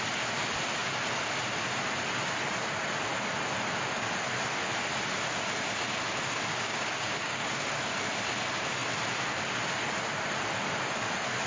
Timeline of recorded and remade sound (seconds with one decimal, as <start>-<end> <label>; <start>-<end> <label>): 0.0-6.5 recorded; 6.5-7.5 remade; 7.5-11.5 recorded

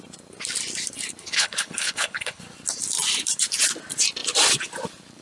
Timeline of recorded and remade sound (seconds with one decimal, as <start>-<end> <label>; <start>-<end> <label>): 0.0-1.2 recorded; 1.2-2.4 remade; 2.4-5.2 recorded

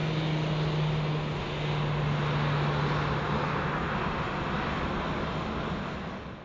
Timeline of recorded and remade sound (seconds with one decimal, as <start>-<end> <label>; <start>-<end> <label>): 0.0-6.4 recorded

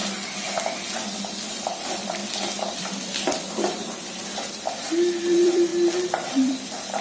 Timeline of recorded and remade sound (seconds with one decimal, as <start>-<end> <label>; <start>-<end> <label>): 0.0-1.5 recorded; 1.5-2.2 remade; 2.2-2.8 recorded; 2.8-5.7 remade; 5.7-6.3 recorded; 6.3-7.0 remade

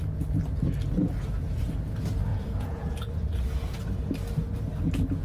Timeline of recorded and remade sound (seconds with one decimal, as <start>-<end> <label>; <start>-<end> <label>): 0.0-2.3 recorded; 2.3-3.1 remade; 3.1-5.2 recorded

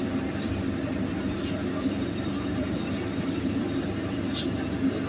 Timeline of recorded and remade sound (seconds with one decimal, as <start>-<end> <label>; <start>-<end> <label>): 0.0-1.6 recorded; 1.6-3.4 remade; 3.4-5.1 recorded